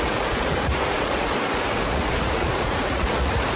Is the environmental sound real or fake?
fake